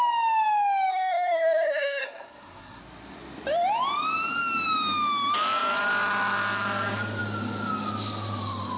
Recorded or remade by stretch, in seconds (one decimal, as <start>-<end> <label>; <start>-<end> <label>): 0.0-0.9 recorded; 0.9-2.8 remade; 2.8-8.8 recorded